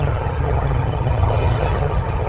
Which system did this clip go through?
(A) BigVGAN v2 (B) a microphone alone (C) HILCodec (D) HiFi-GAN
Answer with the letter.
D